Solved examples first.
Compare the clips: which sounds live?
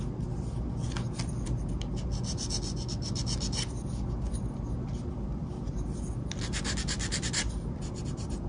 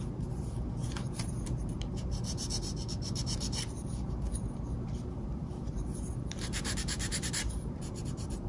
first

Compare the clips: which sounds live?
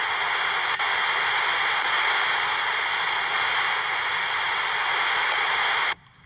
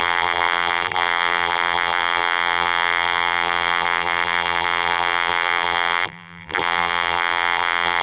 first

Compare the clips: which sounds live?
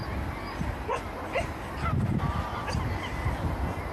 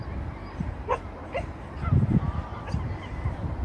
first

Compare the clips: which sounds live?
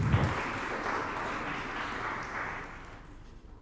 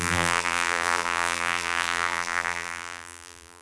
first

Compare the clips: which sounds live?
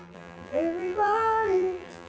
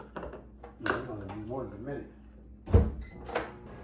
second